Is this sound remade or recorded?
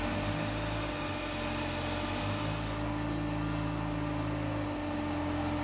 recorded